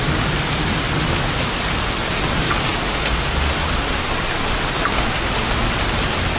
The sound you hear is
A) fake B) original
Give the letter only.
B